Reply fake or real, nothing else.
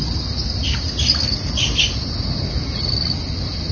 real